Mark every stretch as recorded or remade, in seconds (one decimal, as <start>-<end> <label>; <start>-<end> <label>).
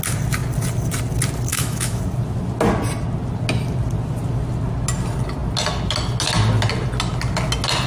0.0-1.5 recorded; 1.5-2.0 remade; 2.0-7.9 recorded